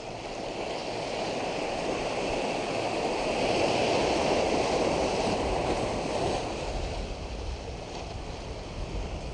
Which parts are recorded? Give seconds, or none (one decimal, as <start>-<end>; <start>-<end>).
0.0-9.3